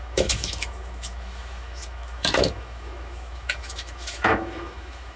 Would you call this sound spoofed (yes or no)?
yes